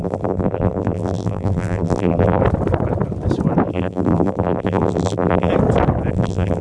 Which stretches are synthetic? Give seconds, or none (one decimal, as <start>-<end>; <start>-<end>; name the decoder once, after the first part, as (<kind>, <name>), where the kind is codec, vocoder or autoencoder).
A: 0.0-2.4 (vocoder, BigVGAN v2); 3.7-5.5; 6.1-6.6